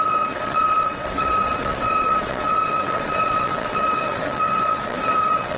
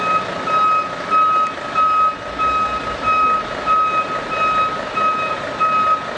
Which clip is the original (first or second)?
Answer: second